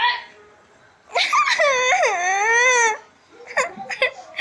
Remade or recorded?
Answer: recorded